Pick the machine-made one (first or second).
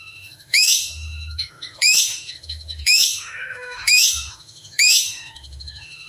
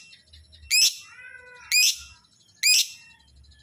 first